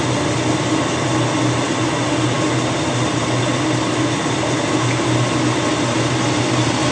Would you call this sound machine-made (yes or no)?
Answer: no